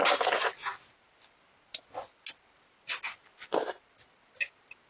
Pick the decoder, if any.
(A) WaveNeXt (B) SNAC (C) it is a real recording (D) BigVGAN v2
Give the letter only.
C